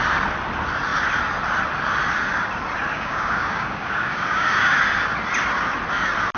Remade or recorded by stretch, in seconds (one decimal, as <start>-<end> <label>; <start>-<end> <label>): 0.0-2.9 recorded; 2.9-4.8 remade; 4.8-6.4 recorded